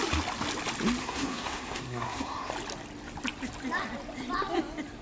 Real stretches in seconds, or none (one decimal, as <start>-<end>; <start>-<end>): 0.0-1.0; 2.5-5.0